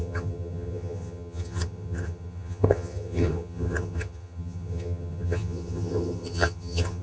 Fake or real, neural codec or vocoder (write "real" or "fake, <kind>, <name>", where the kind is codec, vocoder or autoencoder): fake, vocoder, HiFi-GAN